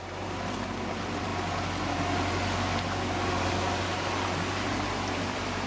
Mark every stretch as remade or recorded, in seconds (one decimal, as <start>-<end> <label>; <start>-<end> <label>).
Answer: 0.0-1.3 remade; 1.3-4.7 recorded; 4.7-5.7 remade